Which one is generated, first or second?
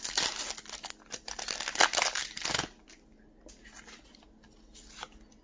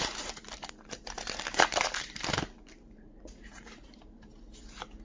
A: second